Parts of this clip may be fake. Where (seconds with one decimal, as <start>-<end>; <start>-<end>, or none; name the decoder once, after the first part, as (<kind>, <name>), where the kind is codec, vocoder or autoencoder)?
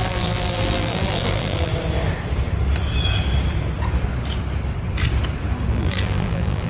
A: 0.0-1.7 (vocoder, BigVGAN v2); 5.7-6.7